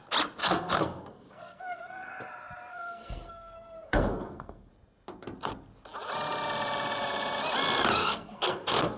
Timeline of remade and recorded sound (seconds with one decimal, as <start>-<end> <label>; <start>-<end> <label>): 0.0-0.4 recorded; 0.4-2.1 remade; 2.1-2.7 recorded; 2.7-4.7 remade; 4.7-8.0 recorded; 8.0-9.0 remade